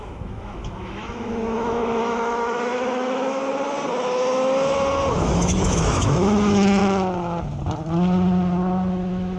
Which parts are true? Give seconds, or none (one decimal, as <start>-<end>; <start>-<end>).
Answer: 3.4-5.1; 6.8-8.9